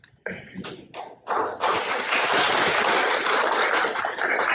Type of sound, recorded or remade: recorded